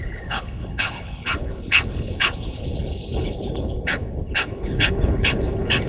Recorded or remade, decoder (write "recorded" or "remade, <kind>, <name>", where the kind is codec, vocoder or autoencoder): remade, codec, HILCodec